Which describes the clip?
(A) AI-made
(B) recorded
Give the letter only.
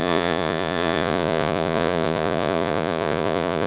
A